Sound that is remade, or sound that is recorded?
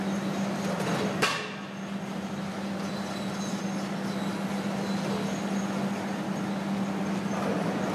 recorded